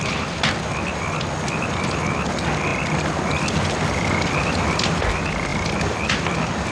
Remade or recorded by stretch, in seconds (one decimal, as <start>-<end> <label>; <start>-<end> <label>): 0.0-6.7 recorded